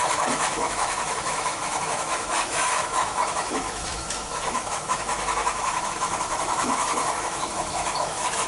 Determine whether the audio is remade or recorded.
remade